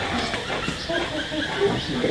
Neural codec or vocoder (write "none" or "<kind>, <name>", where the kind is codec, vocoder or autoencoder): none